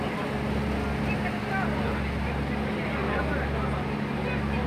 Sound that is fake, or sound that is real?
real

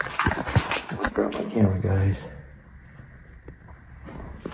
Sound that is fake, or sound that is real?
real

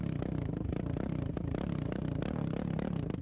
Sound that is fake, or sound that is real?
fake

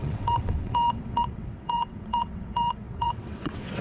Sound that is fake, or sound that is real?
fake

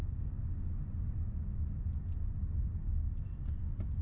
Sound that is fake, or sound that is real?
real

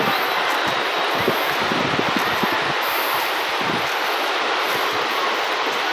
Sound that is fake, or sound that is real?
real